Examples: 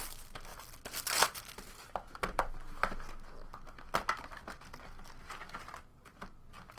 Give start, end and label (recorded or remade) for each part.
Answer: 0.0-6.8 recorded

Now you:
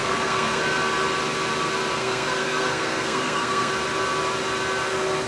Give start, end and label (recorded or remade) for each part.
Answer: 0.0-0.6 remade; 0.6-2.0 recorded; 2.0-3.7 remade; 3.7-5.3 recorded

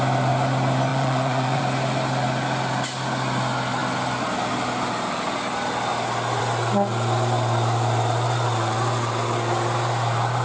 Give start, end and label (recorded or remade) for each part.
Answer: 0.0-0.9 recorded; 0.9-1.6 remade; 1.6-10.4 recorded

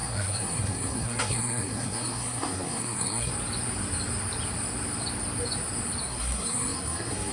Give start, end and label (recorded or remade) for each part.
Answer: 0.0-3.3 remade; 3.3-6.0 recorded; 6.0-7.3 remade

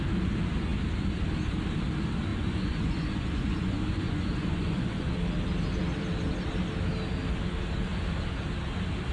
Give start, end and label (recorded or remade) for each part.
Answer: 0.0-2.3 recorded; 2.3-5.1 remade; 5.1-9.1 recorded

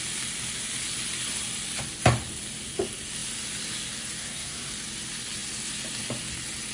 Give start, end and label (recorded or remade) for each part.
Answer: 0.0-4.2 recorded; 4.2-4.7 remade; 4.7-6.7 recorded

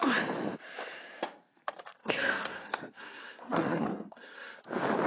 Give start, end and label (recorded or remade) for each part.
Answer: 0.0-2.0 recorded; 2.0-4.6 remade; 4.6-5.1 recorded

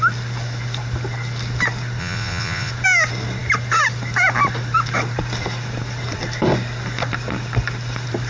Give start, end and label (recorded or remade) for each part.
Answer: 0.0-2.0 recorded; 2.0-2.7 remade; 2.7-8.3 recorded